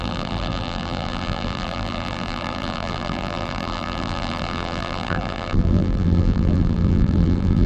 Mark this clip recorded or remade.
remade